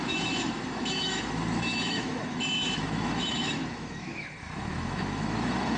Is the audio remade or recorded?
remade